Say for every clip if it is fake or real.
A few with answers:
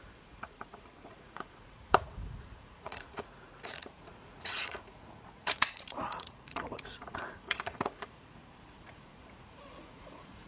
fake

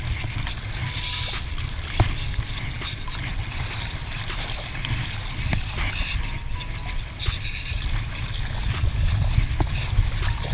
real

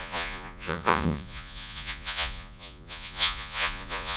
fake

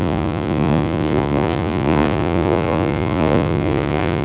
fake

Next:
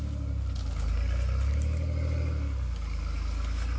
real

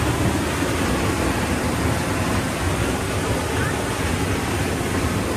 real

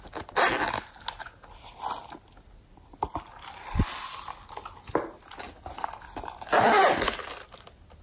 real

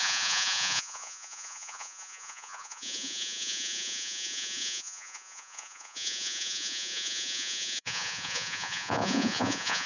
fake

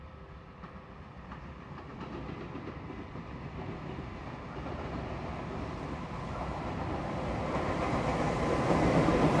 real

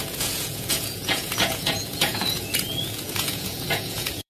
fake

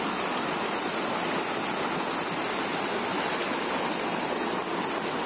real